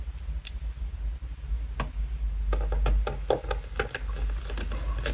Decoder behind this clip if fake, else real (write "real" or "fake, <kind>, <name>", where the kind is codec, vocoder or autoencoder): real